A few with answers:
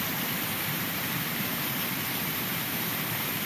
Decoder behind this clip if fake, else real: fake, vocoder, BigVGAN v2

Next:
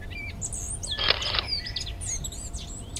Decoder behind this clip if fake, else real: real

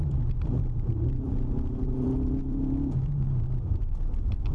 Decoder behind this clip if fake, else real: fake, vocoder, BigVGAN v2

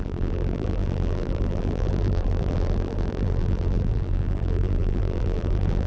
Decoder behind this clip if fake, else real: fake, vocoder, BigVGAN v2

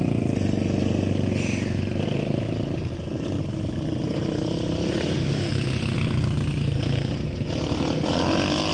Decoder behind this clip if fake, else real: real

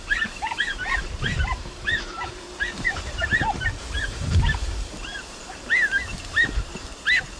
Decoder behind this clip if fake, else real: fake, vocoder, BigVGAN v2